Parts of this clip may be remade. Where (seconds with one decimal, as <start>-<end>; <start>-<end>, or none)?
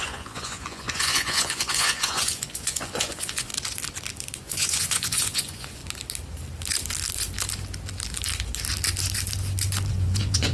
0.0-3.5; 4.4-5.8; 9.9-10.5